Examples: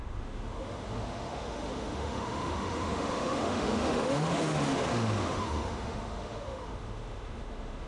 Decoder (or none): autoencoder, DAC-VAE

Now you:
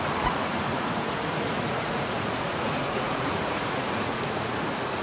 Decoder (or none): vocoder, Vocos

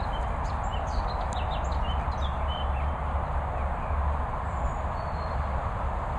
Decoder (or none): none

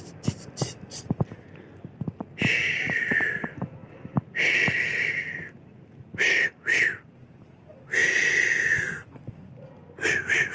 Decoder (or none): none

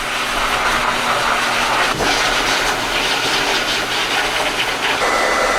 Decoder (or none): none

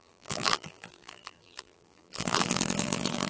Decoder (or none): vocoder, BigVGAN v2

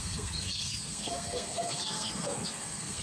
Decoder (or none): codec, SNAC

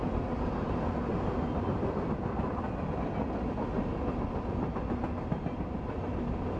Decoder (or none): none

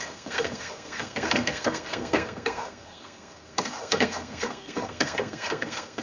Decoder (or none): codec, SNAC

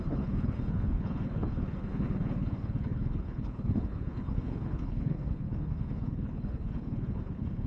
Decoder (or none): codec, HILCodec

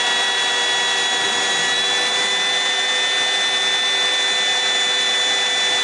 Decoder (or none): none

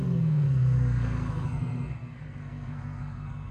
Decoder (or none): codec, SNAC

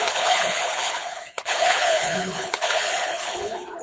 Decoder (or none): codec, HILCodec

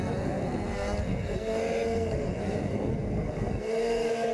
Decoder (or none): codec, SNAC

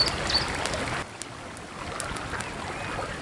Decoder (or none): none